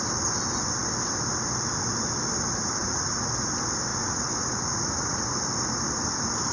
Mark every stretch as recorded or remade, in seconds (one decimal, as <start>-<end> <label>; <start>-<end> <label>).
0.0-2.8 recorded; 2.8-3.3 remade; 3.3-3.9 recorded; 3.9-5.2 remade; 5.2-6.5 recorded